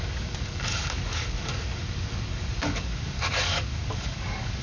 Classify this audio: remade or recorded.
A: remade